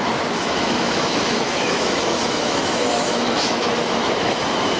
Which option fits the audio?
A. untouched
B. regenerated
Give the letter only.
B